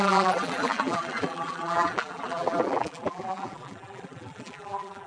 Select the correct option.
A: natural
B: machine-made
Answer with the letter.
B